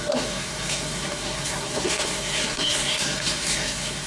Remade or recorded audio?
remade